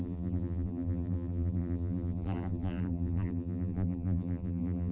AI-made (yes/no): yes